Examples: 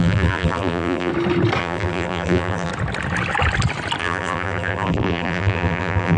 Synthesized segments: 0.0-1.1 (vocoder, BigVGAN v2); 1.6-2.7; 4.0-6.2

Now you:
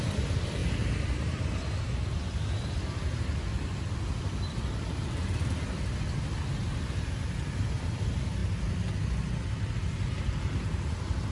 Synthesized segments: 0.6-1.5 (vocoder, BigVGAN v2)

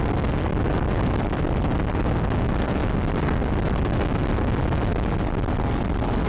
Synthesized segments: 0.0-4.9 (vocoder, BigVGAN v2); 5.8-6.3